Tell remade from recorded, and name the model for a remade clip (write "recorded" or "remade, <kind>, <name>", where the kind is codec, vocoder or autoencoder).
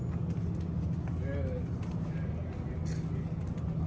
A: recorded